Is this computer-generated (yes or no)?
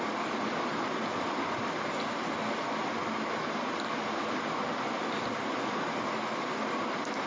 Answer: no